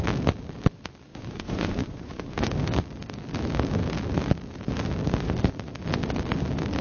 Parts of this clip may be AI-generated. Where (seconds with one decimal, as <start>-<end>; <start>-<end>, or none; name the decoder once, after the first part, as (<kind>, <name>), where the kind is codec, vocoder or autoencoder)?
1.1-2.5 (vocoder, Vocos)